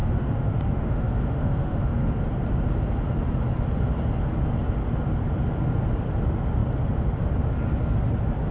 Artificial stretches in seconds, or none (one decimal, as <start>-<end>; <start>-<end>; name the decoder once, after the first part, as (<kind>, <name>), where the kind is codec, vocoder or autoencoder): 0.0-2.2 (autoencoder, DAC-VAE)